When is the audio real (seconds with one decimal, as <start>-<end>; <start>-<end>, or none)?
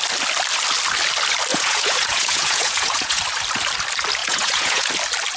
0.0-1.5; 3.2-4.2; 4.9-5.4